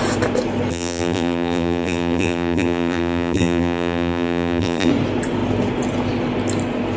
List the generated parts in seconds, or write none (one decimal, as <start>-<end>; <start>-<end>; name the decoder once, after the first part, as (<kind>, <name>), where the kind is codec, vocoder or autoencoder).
0.7-4.9 (vocoder, BigVGAN v2)